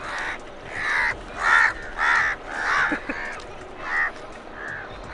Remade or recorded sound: recorded